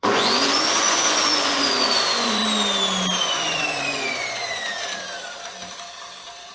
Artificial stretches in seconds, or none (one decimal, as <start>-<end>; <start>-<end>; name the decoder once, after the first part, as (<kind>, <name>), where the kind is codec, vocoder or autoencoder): 0.0-2.4 (vocoder, Vocos); 3.2-4.7